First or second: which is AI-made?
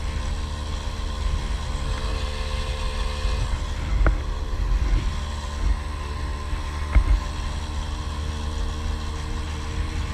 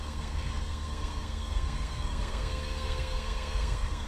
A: second